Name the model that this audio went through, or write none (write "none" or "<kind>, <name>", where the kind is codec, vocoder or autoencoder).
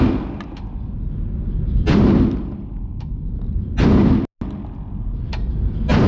none